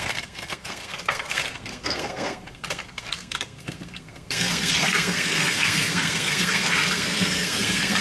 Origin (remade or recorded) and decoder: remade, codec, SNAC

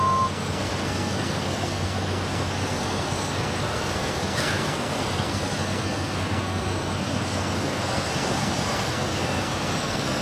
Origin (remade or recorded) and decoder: remade, codec, SNAC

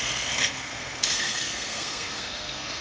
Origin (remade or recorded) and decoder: remade, codec, SNAC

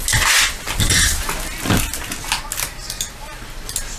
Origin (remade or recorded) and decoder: recorded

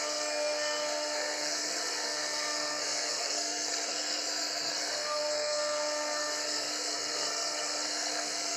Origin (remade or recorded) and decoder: remade, codec, SNAC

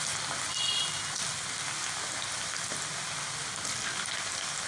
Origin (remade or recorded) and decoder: recorded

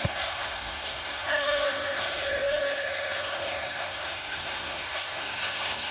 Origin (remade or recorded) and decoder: remade, codec, SNAC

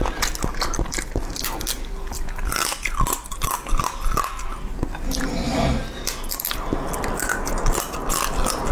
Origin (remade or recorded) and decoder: recorded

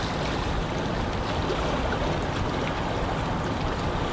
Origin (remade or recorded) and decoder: recorded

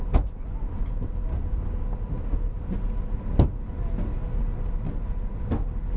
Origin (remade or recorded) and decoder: recorded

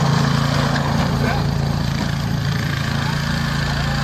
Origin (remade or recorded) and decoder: recorded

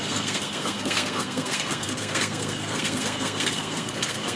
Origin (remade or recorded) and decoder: remade, codec, SNAC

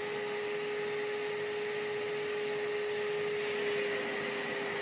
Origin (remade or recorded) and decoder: recorded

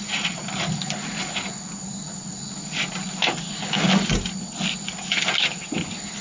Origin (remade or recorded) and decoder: recorded